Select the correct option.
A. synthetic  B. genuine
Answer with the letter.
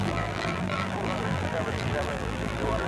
A